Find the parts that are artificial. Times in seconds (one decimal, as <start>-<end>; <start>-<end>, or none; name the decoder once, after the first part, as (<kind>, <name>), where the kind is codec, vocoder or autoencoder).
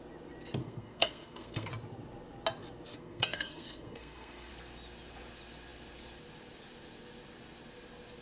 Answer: 0.6-1.7 (codec, SNAC); 2.9-4.5